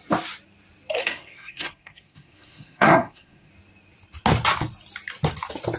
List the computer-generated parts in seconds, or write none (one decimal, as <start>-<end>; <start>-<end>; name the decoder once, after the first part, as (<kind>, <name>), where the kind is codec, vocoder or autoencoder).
1.0-3.5 (codec, SNAC)